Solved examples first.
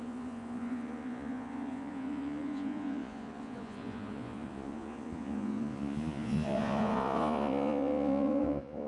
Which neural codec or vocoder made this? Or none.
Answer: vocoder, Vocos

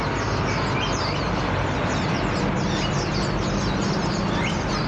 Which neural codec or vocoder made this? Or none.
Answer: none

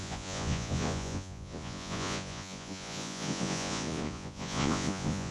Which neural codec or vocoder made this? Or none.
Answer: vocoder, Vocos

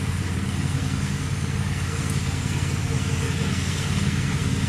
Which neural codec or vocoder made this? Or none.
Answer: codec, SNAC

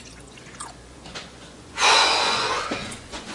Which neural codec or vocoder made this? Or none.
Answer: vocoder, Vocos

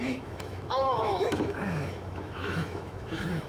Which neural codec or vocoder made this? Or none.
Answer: autoencoder, DAC-VAE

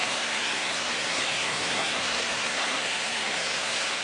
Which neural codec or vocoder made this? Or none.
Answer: codec, SNAC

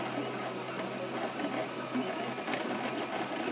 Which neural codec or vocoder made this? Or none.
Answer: none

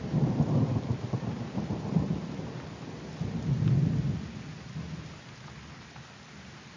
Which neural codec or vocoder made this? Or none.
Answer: none